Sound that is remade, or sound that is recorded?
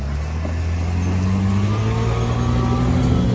recorded